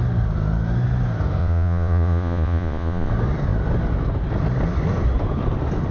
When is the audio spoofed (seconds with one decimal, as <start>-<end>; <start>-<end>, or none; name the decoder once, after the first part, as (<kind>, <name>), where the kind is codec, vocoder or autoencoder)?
1.4-3.1 (vocoder, Vocos)